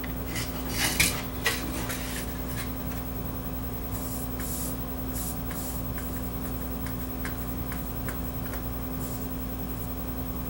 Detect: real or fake real